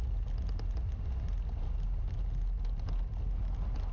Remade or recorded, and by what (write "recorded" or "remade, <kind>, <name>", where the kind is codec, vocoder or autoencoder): recorded